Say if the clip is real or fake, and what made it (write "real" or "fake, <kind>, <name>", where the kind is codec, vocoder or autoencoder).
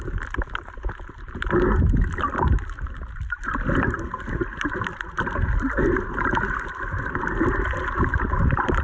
real